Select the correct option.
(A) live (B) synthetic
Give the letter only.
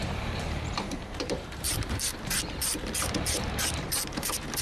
B